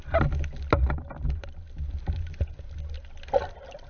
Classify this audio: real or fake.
real